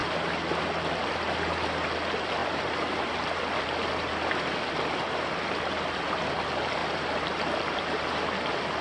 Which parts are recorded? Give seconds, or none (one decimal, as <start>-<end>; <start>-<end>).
1.5-6.8; 8.0-8.8